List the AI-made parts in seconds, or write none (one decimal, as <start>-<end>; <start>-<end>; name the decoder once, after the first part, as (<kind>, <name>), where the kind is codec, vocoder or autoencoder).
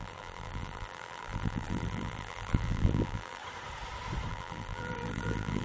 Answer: 0.0-3.4 (vocoder, BigVGAN v2); 4.3-5.6